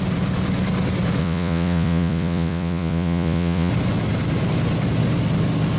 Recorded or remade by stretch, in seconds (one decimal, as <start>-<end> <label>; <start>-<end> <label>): 0.0-1.2 recorded; 1.2-3.7 remade; 3.7-5.8 recorded